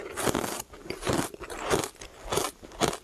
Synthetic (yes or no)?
no